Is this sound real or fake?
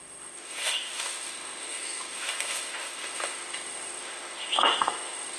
fake